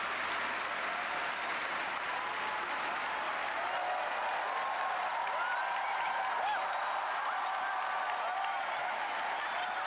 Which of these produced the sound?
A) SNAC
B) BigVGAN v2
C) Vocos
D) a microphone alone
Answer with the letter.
D